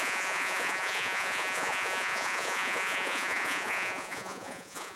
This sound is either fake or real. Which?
fake